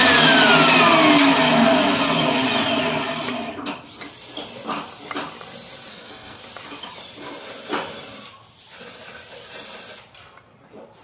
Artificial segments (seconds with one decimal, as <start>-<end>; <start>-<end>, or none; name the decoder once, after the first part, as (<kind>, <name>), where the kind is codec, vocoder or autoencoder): 5.9-6.4 (codec, SNAC)

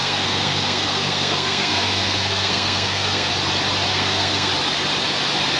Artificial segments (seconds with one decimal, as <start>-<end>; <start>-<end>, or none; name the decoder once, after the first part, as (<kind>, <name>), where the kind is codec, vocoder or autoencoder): 0.0-3.3 (codec, SNAC); 3.9-4.5

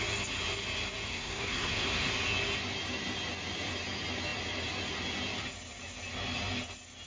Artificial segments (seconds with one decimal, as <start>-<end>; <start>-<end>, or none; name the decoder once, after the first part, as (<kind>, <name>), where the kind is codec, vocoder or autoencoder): 1.1-2.1 (codec, SNAC)

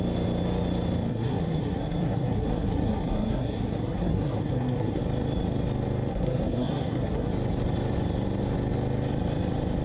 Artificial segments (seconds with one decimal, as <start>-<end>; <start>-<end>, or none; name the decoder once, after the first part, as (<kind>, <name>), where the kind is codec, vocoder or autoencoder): 1.1-5.0 (codec, SNAC); 6.1-7.3